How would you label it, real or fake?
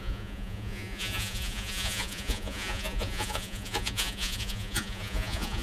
fake